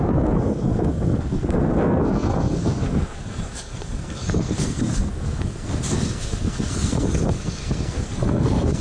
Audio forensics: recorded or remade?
remade